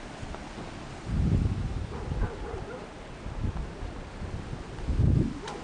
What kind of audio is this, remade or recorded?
recorded